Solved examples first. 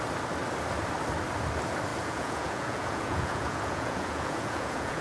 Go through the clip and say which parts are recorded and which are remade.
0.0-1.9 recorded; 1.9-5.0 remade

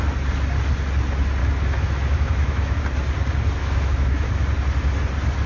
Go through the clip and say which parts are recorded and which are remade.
0.0-1.4 recorded; 1.4-2.8 remade; 2.8-3.6 recorded; 3.6-4.3 remade; 4.3-5.5 recorded

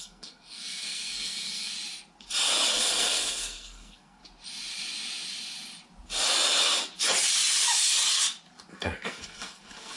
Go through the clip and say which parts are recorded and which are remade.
0.0-1.7 remade; 1.7-2.7 recorded; 2.7-4.2 remade; 4.2-8.7 recorded; 8.7-10.0 remade